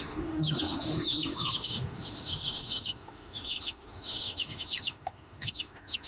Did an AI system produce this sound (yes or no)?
yes